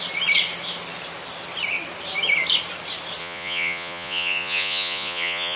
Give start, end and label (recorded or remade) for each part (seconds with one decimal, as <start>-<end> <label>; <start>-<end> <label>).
0.0-3.2 recorded; 3.2-5.6 remade